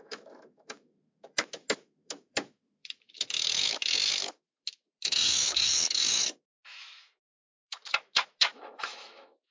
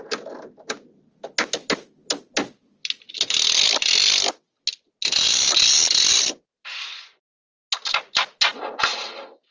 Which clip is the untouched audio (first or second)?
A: second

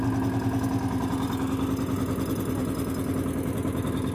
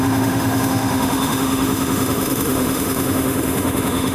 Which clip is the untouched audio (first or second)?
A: first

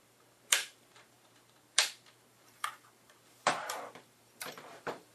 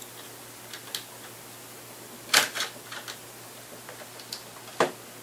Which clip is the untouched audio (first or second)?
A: second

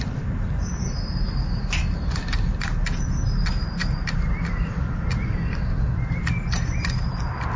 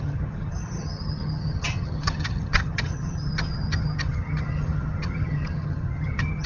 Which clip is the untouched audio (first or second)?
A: first